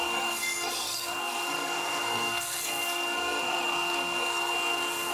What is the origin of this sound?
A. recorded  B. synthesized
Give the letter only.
B